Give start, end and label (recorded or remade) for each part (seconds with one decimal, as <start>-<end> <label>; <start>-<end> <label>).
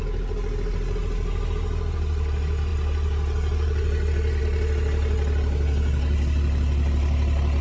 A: 0.0-7.6 recorded